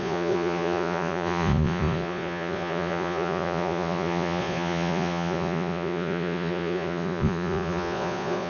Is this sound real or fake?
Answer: fake